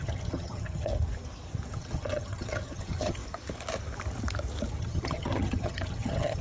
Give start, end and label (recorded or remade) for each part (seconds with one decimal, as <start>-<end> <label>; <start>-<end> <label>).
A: 0.0-0.9 remade; 0.9-1.7 recorded; 1.7-3.2 remade; 3.2-4.8 recorded; 4.8-6.4 remade